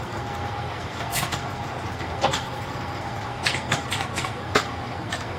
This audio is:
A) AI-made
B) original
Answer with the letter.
A